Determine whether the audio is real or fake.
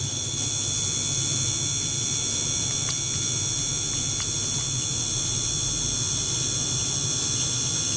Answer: real